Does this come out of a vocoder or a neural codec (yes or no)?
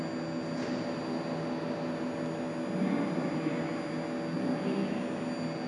no